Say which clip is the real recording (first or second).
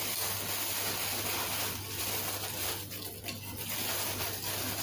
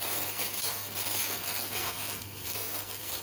first